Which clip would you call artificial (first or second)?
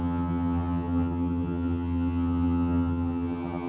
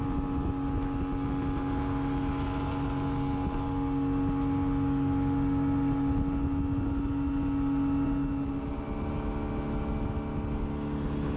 first